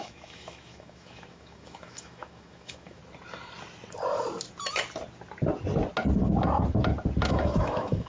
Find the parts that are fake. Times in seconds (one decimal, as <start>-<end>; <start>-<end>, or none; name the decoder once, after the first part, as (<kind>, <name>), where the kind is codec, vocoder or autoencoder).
0.0-3.0 (autoencoder, DAC-VAE); 7.3-8.1